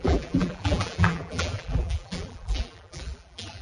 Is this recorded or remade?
remade